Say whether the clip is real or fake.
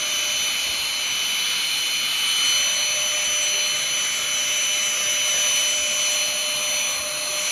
real